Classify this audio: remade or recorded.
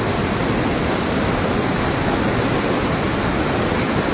recorded